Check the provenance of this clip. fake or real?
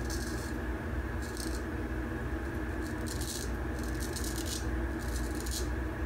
real